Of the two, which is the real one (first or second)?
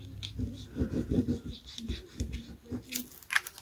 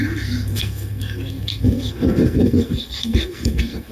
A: first